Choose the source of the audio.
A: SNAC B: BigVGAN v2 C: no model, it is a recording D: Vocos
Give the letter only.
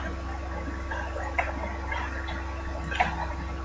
C